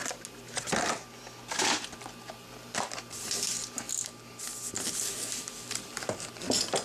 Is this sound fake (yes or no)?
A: no